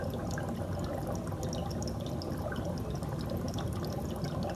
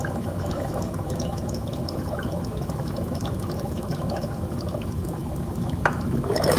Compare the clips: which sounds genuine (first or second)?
first